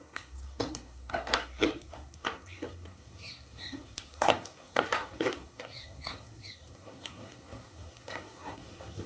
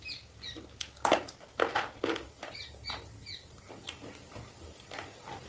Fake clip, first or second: first